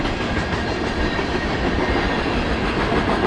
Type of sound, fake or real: real